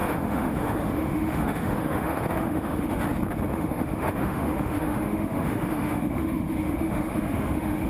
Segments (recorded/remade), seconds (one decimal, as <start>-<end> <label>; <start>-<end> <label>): 0.0-3.0 remade; 3.0-3.5 recorded; 3.5-7.9 remade